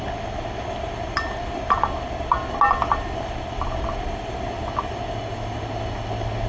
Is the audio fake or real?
real